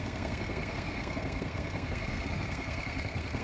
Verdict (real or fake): fake